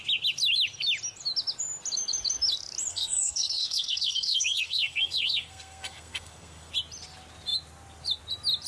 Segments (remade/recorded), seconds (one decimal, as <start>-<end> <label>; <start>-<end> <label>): 0.0-2.9 recorded; 2.9-6.7 remade; 6.7-8.7 recorded